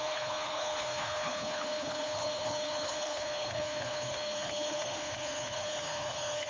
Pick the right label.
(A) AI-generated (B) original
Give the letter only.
A